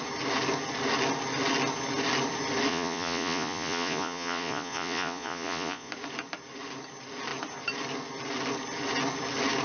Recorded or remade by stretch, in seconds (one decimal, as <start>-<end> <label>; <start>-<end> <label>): 0.0-2.7 recorded; 2.7-5.9 remade; 5.9-9.6 recorded